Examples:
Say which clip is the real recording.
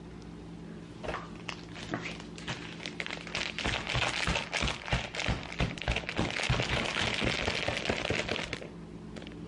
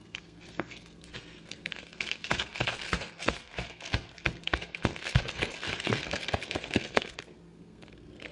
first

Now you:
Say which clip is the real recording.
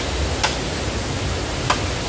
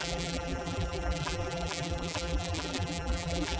first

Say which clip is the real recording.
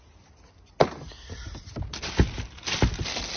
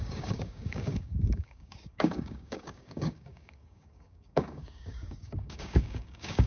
first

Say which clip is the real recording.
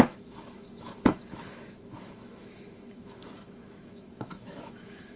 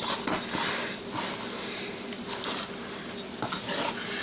second